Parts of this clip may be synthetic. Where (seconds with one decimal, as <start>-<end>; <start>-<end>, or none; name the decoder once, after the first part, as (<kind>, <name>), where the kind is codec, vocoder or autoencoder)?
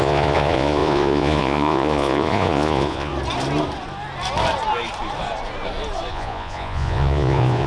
0.0-3.1 (vocoder, Vocos); 6.1-7.7